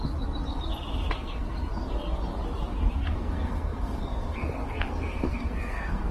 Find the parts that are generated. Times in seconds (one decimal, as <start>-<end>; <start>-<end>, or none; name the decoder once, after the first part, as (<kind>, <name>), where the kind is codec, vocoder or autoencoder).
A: 1.1-1.6 (codec, SNAC); 2.9-6.1